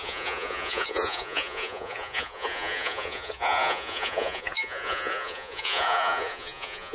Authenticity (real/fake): fake